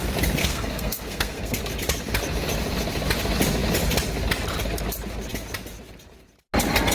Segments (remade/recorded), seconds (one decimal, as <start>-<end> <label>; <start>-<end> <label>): 0.0-0.4 recorded; 0.4-1.6 remade; 1.6-6.9 recorded